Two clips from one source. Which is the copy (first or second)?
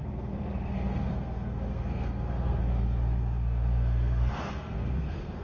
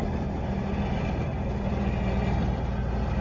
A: first